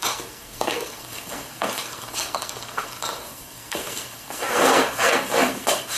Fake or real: fake